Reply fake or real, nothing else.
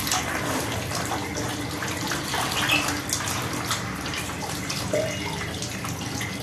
real